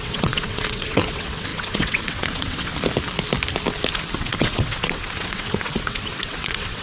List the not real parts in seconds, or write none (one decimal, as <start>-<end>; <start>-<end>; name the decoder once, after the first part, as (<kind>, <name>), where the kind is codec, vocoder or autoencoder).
0.0-2.7 (vocoder, WaveNeXt); 4.1-6.8